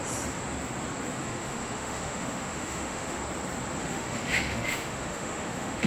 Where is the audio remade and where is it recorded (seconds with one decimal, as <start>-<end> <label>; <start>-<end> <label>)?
0.0-1.1 recorded; 1.1-3.2 remade; 3.2-3.8 recorded; 3.8-5.9 remade